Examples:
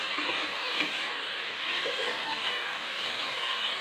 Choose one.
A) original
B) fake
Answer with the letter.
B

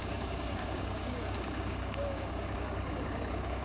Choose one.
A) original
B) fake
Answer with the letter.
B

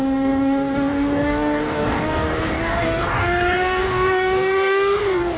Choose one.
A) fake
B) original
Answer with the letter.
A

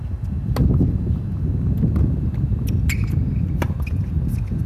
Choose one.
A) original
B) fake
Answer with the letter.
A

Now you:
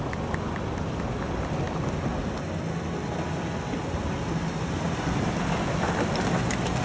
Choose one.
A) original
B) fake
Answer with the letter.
A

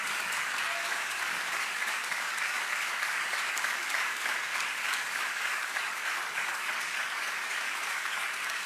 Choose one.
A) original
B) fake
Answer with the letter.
B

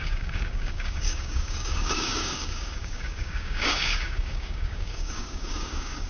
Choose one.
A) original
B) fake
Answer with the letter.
B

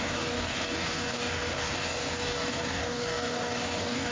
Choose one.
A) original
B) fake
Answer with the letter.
B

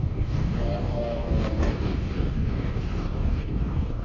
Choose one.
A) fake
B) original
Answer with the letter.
A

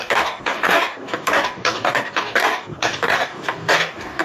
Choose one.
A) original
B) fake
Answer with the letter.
B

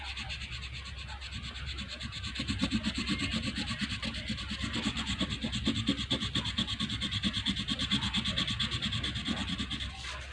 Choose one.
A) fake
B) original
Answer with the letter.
B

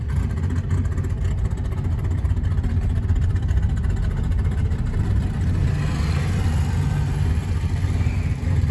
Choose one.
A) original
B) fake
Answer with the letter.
A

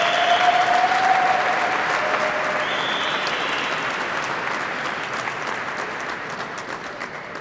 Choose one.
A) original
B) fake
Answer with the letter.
A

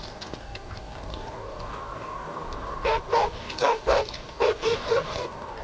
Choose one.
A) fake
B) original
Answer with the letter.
A